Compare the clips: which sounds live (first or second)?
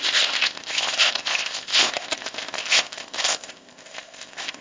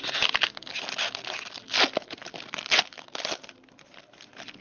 second